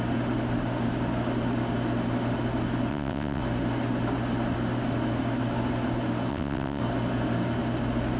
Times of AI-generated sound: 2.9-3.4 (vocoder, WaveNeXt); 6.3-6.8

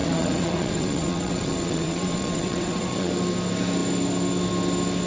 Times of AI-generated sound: 0.0-3.1 (vocoder, WaveNeXt)

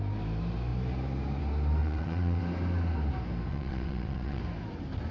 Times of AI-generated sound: 1.8-2.4 (vocoder, WaveNeXt); 3.5-4.4